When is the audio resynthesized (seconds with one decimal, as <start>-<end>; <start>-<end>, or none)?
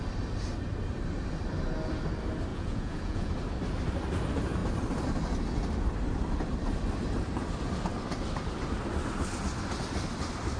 2.5-3.3